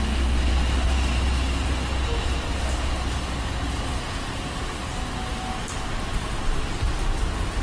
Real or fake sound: real